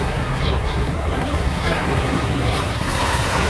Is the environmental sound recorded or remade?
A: remade